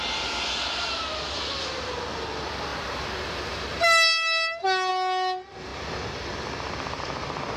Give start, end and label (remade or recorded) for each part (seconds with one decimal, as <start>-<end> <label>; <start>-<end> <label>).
0.0-7.6 recorded

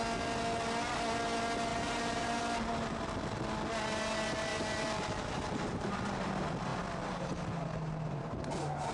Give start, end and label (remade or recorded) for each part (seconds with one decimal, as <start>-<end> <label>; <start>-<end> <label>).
0.0-1.7 recorded; 1.7-2.4 remade; 2.4-4.5 recorded; 4.5-6.3 remade; 6.3-8.9 recorded

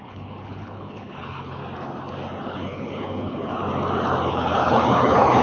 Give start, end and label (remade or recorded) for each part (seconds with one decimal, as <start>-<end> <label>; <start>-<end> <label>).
0.0-1.6 remade; 1.6-2.4 recorded; 2.4-3.5 remade; 3.5-4.3 recorded; 4.3-5.4 remade

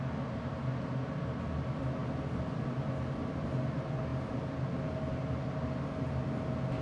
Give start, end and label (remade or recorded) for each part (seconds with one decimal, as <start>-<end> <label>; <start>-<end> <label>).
0.0-6.8 recorded

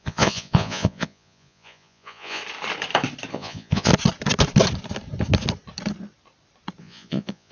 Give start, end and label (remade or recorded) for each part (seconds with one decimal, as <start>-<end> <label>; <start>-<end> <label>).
0.0-2.4 remade; 2.4-3.3 recorded; 3.3-3.9 remade; 3.9-6.8 recorded; 6.8-7.5 remade

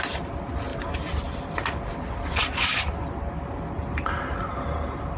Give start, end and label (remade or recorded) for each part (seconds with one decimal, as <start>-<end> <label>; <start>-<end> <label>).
0.0-5.2 recorded

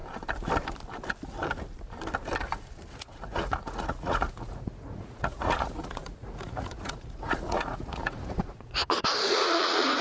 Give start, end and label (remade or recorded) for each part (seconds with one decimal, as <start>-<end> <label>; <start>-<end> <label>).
0.0-2.9 recorded; 2.9-10.0 remade

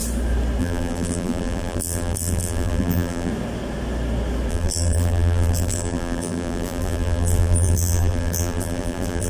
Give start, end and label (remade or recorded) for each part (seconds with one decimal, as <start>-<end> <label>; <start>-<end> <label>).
0.0-0.6 recorded; 0.6-3.3 remade; 3.3-4.5 recorded; 4.5-9.3 remade